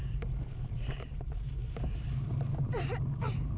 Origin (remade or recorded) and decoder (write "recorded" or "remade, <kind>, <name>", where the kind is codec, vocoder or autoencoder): remade, vocoder, BigVGAN v2